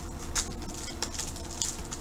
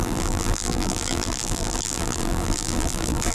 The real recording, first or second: first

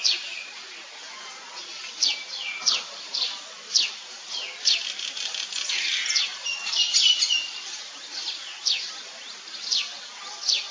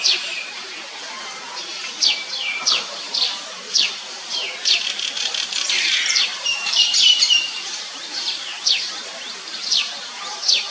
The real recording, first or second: first